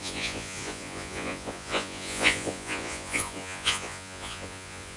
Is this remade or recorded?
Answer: remade